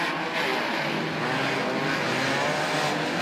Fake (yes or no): no